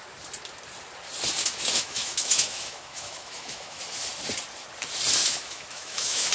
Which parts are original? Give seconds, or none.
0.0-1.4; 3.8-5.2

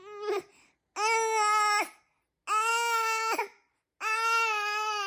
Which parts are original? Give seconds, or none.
0.0-2.7; 3.4-5.1

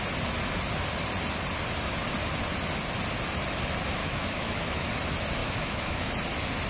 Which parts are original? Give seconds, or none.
0.0-4.0; 4.9-5.4; 6.1-6.7

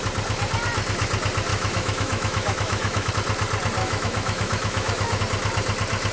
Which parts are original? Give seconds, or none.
0.0-1.5; 3.1-3.8; 5.2-6.1

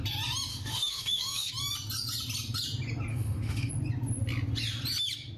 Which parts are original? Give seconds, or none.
0.0-0.5; 1.5-3.1; 3.7-5.4

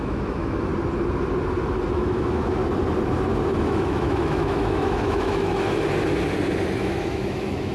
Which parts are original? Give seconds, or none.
0.7-1.9; 2.6-3.6; 5.5-6.8

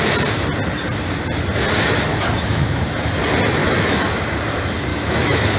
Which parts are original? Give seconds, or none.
0.0-2.1; 2.8-3.6; 4.1-4.9

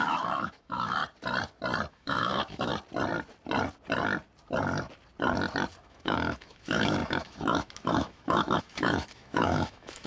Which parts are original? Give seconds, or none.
1.0-1.9; 2.7-5.8